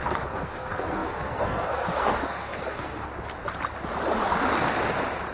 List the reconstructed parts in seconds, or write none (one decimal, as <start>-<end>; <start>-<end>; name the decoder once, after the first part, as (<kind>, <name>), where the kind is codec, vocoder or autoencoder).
0.0-3.1 (codec, SNAC)